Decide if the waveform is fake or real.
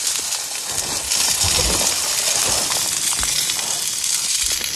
real